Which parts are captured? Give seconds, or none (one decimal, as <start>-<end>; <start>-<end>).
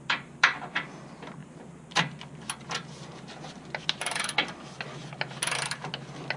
0.0-6.4